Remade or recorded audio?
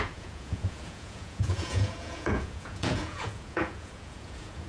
remade